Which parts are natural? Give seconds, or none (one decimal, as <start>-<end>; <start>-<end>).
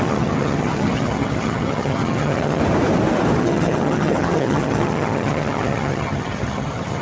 2.6-3.4